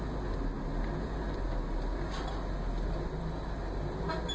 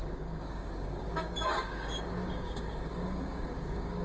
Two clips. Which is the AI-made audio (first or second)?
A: second